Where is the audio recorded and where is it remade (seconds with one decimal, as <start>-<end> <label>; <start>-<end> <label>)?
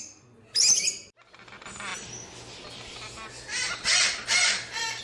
0.0-5.0 recorded